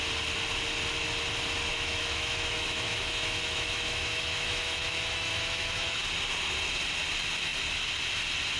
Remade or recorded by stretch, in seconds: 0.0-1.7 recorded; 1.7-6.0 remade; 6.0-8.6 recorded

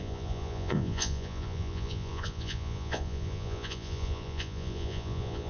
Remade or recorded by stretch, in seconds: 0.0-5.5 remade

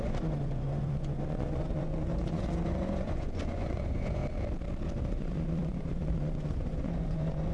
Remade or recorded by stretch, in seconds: 0.0-4.2 remade; 4.2-5.0 recorded; 5.0-7.5 remade

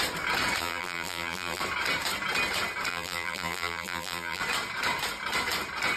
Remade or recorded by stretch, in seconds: 0.0-0.6 recorded; 0.6-1.6 remade; 1.6-2.9 recorded; 2.9-4.4 remade; 4.4-6.0 recorded

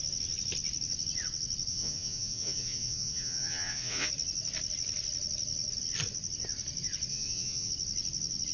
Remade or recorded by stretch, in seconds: 0.0-1.7 recorded; 1.7-4.1 remade; 4.1-7.1 recorded; 7.1-7.7 remade; 7.7-8.5 recorded

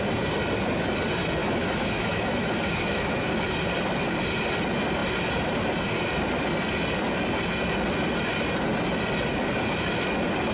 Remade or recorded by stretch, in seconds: 0.0-1.4 recorded; 1.4-3.4 remade; 3.4-10.5 recorded

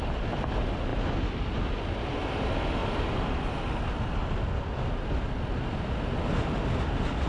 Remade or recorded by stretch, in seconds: 0.0-7.3 recorded

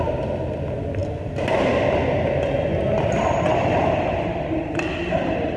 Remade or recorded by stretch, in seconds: 0.0-5.6 recorded